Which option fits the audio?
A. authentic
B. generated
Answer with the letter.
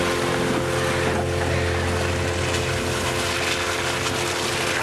A